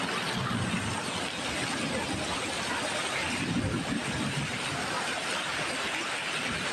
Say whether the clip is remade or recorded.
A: recorded